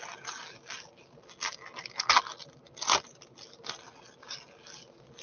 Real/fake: real